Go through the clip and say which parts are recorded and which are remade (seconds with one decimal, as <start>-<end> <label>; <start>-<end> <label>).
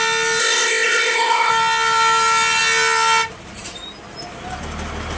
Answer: 0.0-0.4 recorded; 0.4-1.5 remade; 1.5-5.2 recorded